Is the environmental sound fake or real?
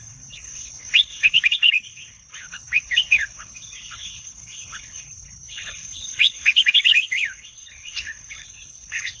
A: fake